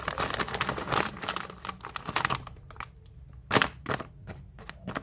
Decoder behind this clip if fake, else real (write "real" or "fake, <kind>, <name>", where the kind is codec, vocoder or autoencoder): real